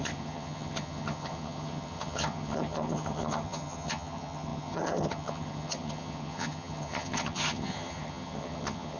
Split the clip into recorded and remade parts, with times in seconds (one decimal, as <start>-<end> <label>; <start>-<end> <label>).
0.0-9.0 remade